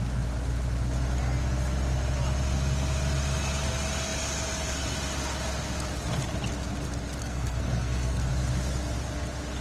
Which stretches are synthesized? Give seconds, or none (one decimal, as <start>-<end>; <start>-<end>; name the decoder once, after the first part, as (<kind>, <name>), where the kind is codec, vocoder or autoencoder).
7.2-8.3 (codec, SNAC)